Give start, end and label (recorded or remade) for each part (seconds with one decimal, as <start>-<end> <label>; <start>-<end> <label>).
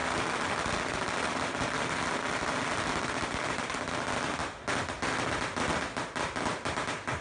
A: 0.0-7.2 recorded